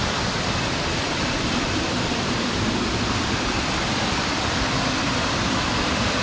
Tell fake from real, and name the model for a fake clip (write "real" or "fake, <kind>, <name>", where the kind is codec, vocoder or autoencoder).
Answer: fake, vocoder, BigVGAN v2